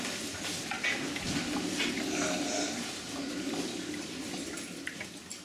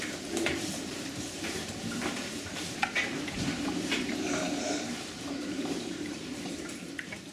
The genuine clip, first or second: first